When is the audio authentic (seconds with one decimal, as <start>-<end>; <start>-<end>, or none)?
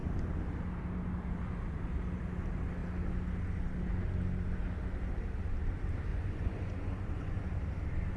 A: 0.0-6.1; 7.5-8.2